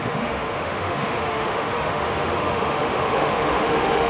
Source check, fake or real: fake